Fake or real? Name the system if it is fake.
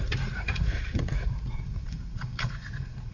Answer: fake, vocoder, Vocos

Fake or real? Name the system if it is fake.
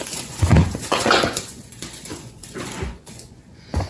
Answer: fake, vocoder, Vocos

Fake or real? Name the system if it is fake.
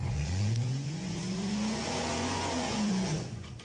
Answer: fake, vocoder, Vocos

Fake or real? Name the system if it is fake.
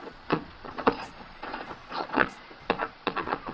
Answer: fake, vocoder, Vocos